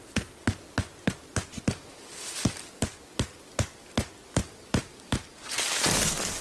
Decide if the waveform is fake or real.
real